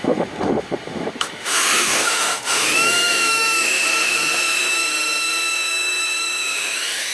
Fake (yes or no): yes